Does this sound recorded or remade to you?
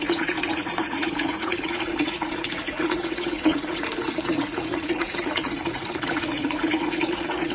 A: remade